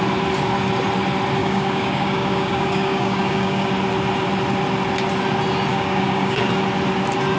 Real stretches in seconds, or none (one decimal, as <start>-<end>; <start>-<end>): 0.0-1.4; 3.7-5.7; 6.5-7.4